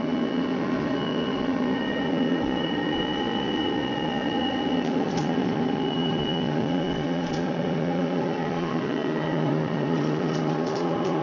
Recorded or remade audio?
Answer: remade